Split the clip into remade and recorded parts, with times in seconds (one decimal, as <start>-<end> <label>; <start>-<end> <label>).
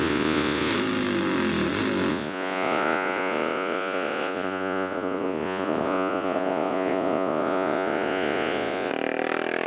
0.0-0.7 remade; 0.7-2.1 recorded; 2.1-8.9 remade; 8.9-9.7 recorded